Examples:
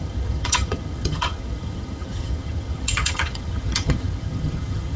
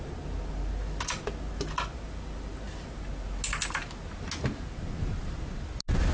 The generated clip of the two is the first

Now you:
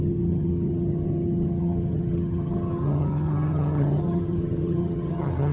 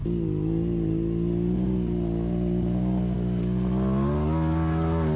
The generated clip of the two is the first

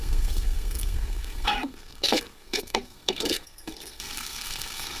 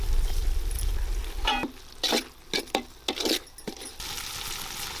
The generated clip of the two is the first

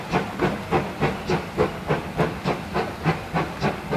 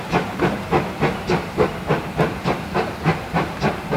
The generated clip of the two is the second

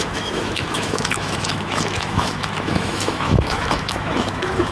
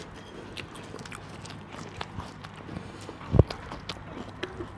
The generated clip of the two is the first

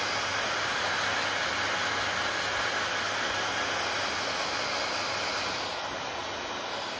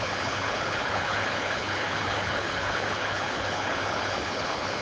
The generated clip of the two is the second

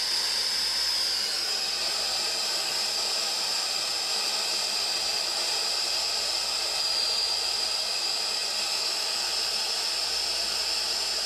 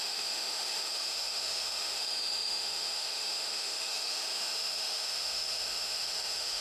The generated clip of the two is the second